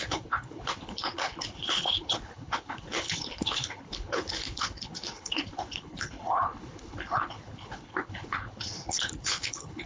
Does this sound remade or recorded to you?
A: remade